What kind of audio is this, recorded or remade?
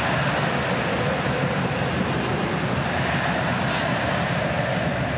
recorded